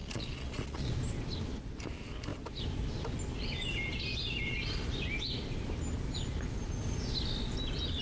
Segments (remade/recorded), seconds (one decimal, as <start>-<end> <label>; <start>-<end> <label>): 0.0-0.9 remade; 0.9-8.0 recorded